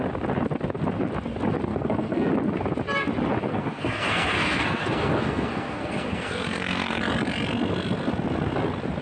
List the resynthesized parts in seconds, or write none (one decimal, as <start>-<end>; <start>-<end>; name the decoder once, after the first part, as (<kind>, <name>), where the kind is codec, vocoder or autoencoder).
1.7-2.3 (codec, SNAC); 3.5-7.0